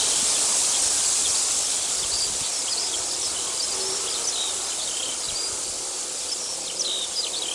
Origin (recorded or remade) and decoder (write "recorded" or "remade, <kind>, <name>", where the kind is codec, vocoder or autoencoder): recorded